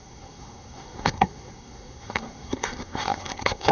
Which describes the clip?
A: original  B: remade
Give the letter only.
B